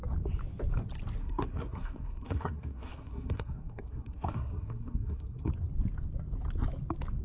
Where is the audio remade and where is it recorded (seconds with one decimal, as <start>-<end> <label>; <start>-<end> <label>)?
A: 0.0-1.2 recorded; 1.2-5.5 remade; 5.5-7.2 recorded

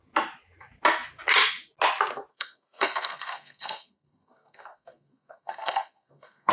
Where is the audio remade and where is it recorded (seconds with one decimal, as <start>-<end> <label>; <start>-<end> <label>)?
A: 0.0-2.3 recorded; 2.3-6.5 remade

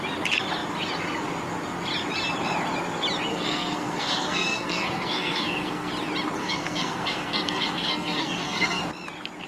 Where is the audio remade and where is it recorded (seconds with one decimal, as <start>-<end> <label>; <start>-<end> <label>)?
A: 0.0-3.3 recorded; 3.3-5.9 remade; 5.9-6.4 recorded; 6.4-8.8 remade; 8.8-9.5 recorded

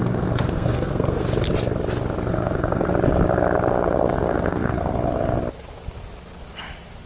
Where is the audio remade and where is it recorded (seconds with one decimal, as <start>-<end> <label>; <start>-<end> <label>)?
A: 0.0-1.2 remade; 1.2-2.3 recorded; 2.3-2.9 remade; 2.9-3.7 recorded; 3.7-5.4 remade; 5.4-7.1 recorded